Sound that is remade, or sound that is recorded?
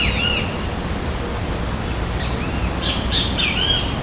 recorded